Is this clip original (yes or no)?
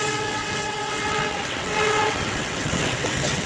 no